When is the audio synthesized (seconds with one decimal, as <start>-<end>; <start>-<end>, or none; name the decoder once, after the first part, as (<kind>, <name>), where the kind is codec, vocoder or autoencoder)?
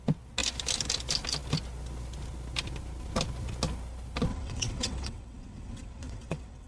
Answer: 4.3-6.7 (vocoder, WaveNeXt)